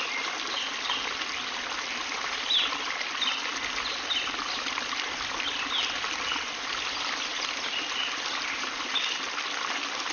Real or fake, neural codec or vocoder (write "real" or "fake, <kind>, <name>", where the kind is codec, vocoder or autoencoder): fake, vocoder, BigVGAN v2